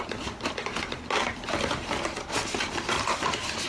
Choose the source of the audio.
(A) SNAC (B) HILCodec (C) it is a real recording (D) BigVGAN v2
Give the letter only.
C